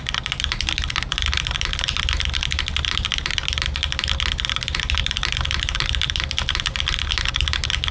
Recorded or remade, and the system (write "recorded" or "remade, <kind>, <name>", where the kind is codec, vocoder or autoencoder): recorded